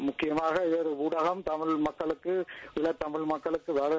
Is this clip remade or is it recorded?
recorded